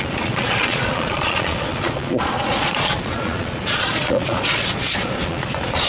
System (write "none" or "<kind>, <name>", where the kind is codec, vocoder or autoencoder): vocoder, Vocos